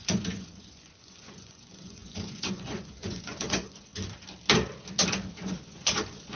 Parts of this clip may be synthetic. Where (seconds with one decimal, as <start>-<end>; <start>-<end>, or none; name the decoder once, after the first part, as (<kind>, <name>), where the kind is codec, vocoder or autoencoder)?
0.0-3.9 (vocoder, Vocos); 5.3-6.4